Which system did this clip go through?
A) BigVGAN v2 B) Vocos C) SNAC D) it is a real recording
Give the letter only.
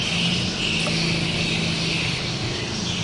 D